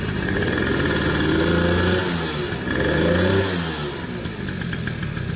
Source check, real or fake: real